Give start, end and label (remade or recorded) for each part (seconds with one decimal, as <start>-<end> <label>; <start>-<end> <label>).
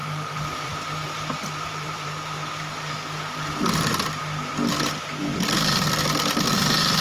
0.0-4.2 remade; 4.2-7.0 recorded